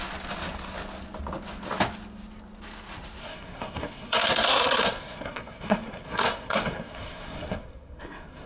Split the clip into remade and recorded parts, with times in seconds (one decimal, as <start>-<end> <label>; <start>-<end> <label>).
0.0-3.2 recorded; 3.2-8.5 remade